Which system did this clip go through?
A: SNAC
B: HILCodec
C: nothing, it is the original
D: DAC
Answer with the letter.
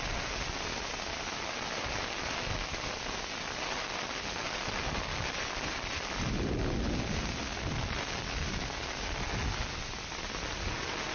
C